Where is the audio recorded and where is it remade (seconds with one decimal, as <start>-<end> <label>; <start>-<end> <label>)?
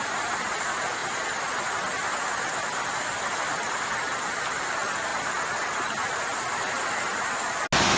0.0-8.0 recorded